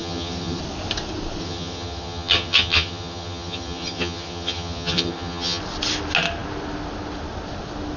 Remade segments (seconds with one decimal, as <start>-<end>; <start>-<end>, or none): 0.0-0.6; 1.4-5.6